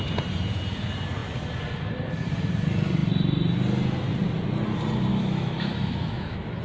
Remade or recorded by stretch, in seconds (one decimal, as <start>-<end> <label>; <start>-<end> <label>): 0.0-5.1 recorded; 5.1-6.6 remade